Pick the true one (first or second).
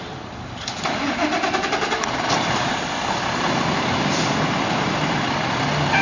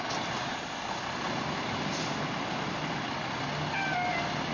second